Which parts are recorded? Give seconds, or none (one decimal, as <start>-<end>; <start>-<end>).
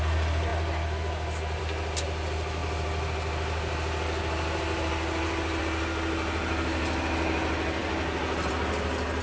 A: 0.0-9.2